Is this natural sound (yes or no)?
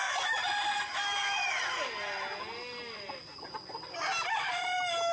yes